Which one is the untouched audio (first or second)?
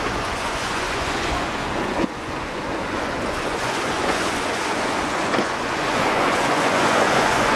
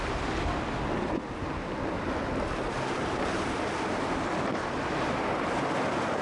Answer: second